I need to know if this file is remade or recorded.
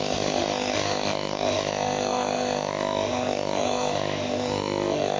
remade